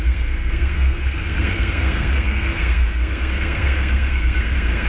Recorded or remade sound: remade